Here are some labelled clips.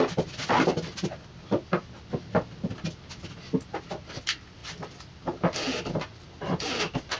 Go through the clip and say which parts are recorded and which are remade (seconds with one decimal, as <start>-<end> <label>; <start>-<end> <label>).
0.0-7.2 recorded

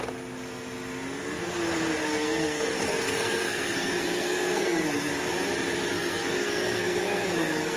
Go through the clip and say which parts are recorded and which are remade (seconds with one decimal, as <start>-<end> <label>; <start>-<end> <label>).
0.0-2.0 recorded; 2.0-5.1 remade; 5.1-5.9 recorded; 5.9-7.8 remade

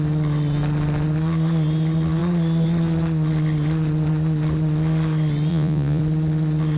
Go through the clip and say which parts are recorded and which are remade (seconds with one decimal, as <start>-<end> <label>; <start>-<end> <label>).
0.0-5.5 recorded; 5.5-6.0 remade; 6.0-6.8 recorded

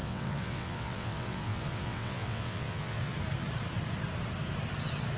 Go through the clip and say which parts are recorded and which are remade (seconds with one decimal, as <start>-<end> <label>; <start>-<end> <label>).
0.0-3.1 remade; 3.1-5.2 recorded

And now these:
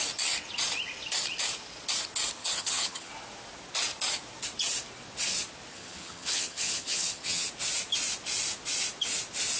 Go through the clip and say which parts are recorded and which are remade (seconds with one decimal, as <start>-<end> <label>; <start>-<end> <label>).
0.0-2.4 recorded; 2.4-3.1 remade; 3.1-5.7 recorded; 5.7-7.5 remade; 7.5-9.6 recorded

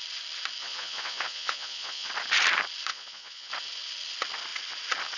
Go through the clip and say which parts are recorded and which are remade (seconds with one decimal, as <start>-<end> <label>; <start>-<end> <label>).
0.0-0.6 recorded; 0.6-2.1 remade; 2.1-2.9 recorded; 2.9-3.5 remade; 3.5-5.2 recorded